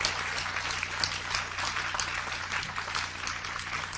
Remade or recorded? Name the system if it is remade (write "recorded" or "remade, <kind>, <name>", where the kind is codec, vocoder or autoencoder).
recorded